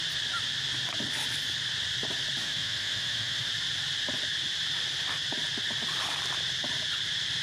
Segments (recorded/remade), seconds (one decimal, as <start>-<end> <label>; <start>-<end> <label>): 0.0-2.4 recorded; 2.4-3.5 remade; 3.5-7.4 recorded